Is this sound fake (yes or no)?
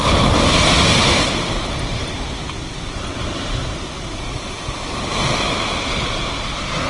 no